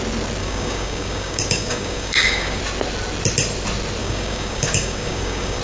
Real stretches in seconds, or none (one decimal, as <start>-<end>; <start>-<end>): 0.0-0.4; 2.6-4.0